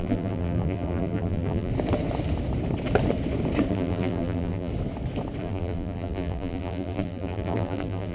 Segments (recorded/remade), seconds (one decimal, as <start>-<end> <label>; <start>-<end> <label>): 0.0-1.7 remade; 1.7-3.7 recorded; 3.7-4.7 remade; 4.7-5.4 recorded; 5.4-8.1 remade